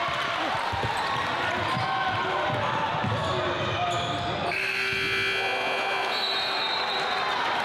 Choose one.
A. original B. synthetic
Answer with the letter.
A